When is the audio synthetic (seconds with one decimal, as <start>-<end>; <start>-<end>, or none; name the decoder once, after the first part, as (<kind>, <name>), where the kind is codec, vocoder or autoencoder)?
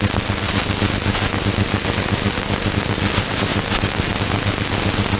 none